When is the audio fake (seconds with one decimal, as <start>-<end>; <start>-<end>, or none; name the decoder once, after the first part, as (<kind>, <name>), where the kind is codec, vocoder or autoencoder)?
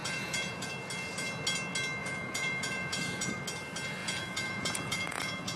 0.0-0.7 (vocoder, Vocos); 2.0-3.3; 4.0-5.6